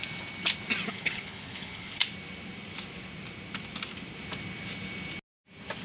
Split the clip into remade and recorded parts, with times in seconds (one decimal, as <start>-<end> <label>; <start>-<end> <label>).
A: 0.0-0.9 recorded; 0.9-2.0 remade; 2.0-5.8 recorded